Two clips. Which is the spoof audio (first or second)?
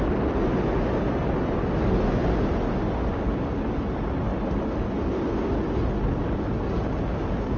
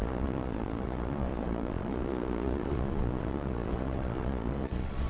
second